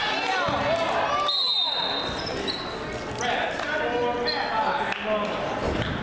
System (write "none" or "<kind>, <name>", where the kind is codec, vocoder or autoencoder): none